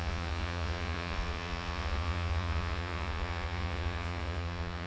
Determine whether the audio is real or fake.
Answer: fake